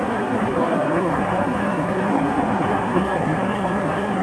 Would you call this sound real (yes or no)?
no